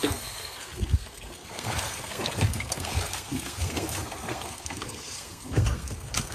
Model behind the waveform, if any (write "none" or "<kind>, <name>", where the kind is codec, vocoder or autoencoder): codec, SNAC